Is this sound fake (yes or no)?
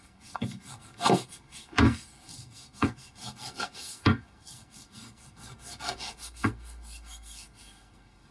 yes